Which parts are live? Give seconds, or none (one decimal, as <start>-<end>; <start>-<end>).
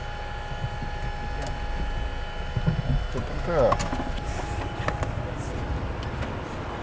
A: 0.0-6.8